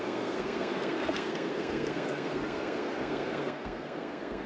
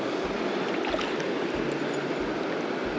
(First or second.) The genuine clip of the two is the second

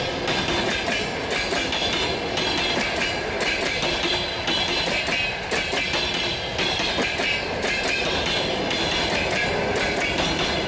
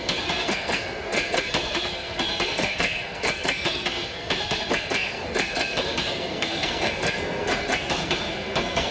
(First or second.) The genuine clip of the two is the first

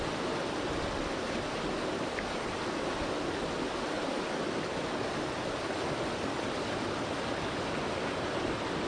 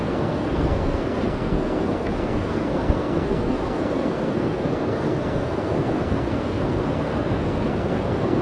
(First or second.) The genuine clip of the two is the first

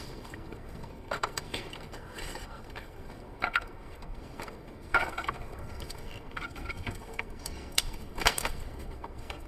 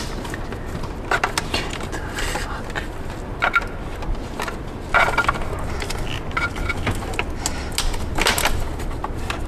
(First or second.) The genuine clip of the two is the second